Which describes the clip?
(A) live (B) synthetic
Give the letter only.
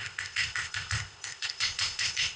B